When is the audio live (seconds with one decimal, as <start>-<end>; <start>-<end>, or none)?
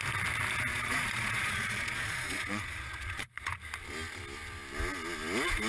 0.0-0.7; 3.6-5.7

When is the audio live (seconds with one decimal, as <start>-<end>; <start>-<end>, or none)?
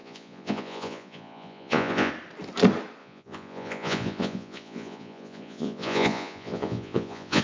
2.1-3.0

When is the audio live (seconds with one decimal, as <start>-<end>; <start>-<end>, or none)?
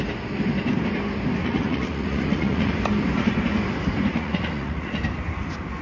0.0-1.4; 2.7-4.1; 5.0-5.8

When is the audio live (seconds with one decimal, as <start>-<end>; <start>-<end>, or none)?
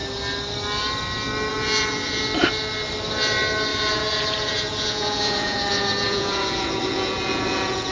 0.0-1.5; 2.2-3.7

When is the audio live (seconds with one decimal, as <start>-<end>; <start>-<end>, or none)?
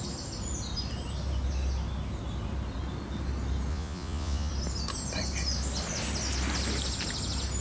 0.0-3.7; 4.5-7.6